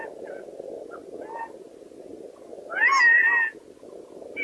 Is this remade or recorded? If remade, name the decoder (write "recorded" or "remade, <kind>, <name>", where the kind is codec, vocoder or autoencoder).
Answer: recorded